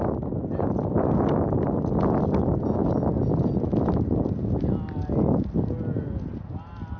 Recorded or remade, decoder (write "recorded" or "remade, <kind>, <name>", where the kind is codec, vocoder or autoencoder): recorded